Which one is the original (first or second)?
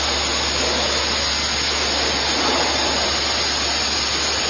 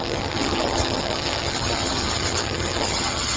first